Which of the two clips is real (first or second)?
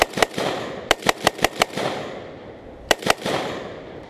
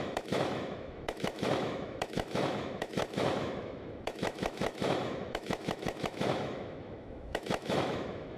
first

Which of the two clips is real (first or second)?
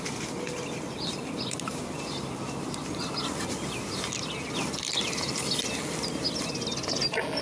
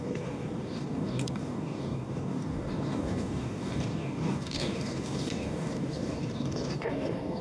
first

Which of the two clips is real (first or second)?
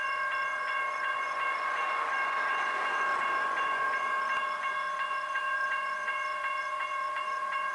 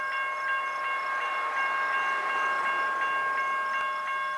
second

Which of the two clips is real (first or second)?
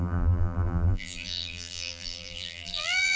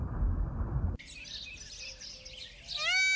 second